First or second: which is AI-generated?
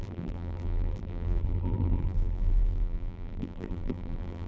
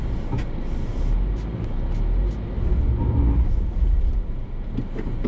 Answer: first